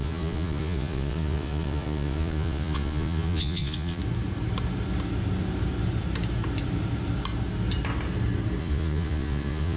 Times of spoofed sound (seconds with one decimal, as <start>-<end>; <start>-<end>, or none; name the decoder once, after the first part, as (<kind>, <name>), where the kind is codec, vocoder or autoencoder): 0.0-4.0 (vocoder, Vocos); 8.6-9.8